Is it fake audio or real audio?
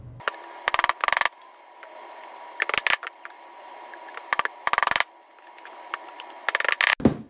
real